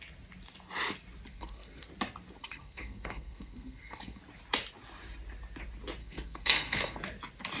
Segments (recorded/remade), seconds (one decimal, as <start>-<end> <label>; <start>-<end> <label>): 0.0-1.3 recorded; 1.3-1.9 remade; 1.9-2.4 recorded; 2.4-4.2 remade; 4.2-6.0 recorded; 6.0-7.0 remade; 7.0-7.6 recorded